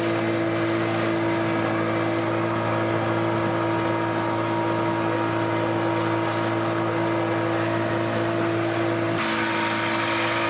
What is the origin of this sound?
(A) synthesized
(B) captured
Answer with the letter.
B